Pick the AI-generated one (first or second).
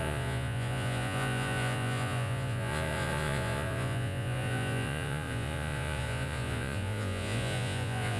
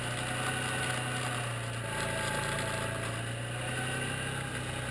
first